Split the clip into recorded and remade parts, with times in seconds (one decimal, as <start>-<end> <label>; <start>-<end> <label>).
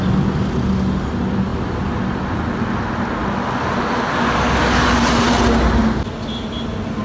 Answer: 0.0-7.0 recorded